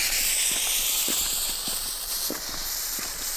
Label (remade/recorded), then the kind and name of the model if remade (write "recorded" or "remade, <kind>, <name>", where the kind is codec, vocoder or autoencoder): recorded